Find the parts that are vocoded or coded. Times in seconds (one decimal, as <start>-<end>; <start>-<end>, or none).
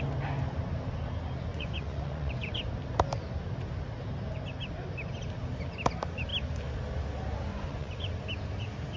1.5-2.6; 7.5-8.1